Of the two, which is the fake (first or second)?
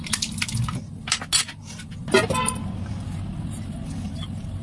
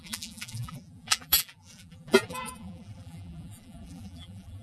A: second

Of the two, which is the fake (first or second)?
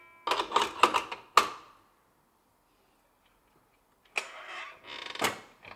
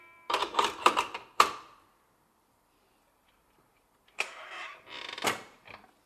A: second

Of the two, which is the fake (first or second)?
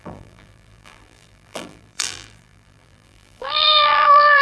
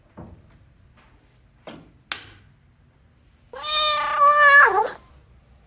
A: first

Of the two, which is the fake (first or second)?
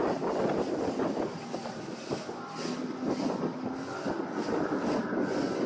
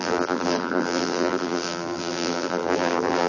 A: second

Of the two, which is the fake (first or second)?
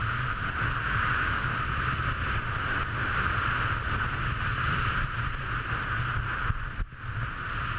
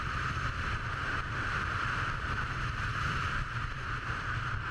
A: second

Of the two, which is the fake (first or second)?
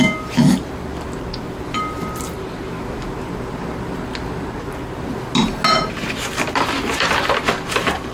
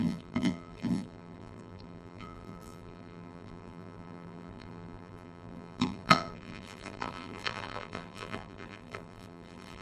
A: second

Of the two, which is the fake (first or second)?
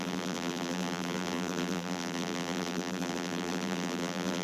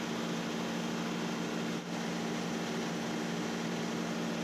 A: first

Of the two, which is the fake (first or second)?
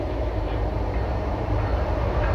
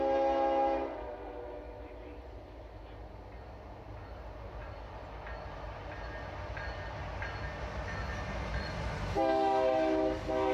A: first